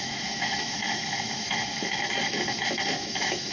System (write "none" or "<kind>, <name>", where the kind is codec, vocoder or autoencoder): autoencoder, DAC-VAE